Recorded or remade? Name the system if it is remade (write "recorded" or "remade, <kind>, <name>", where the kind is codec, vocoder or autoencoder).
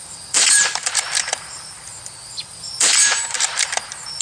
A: remade, vocoder, BigVGAN v2